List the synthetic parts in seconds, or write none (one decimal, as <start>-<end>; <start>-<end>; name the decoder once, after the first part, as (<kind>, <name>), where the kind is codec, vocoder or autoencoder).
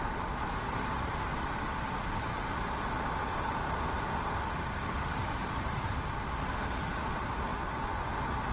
7.5-8.1 (vocoder, Vocos)